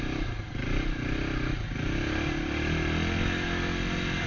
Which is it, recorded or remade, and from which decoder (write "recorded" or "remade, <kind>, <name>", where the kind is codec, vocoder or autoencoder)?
recorded